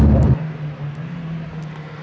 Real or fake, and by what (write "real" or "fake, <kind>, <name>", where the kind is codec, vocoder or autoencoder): real